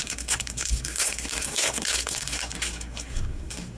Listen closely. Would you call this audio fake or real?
fake